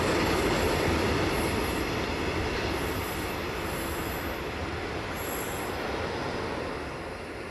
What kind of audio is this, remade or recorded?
recorded